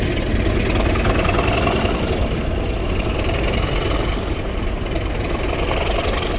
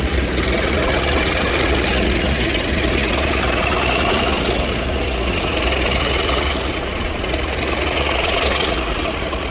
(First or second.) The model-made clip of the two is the second